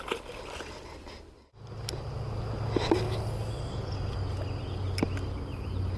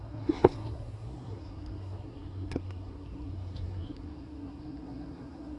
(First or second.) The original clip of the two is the first